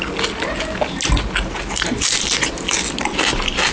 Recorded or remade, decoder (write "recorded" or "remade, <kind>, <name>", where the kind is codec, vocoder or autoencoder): recorded